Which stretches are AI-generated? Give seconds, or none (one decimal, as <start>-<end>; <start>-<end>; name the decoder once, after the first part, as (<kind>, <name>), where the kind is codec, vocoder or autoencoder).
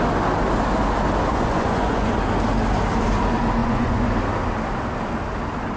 1.3-2.2 (vocoder, Vocos); 3.6-4.1